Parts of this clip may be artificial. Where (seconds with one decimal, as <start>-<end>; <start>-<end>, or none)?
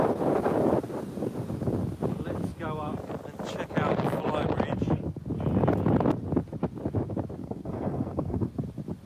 7.4-8.5